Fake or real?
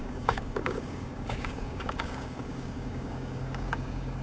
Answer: fake